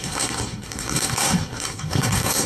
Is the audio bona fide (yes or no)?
no